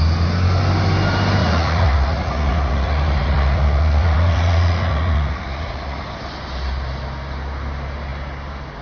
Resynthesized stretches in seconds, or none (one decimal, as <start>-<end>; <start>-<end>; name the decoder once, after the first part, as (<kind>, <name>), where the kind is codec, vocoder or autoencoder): 1.4-6.0 (vocoder, Vocos)